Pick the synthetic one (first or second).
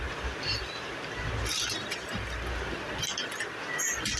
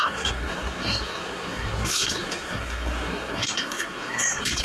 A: second